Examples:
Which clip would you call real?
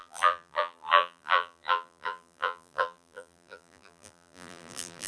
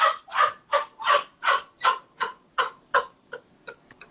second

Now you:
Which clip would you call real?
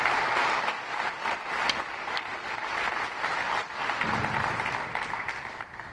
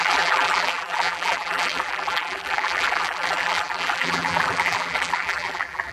first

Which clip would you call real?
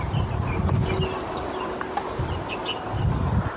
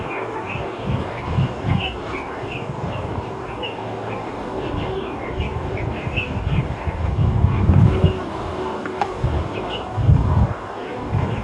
first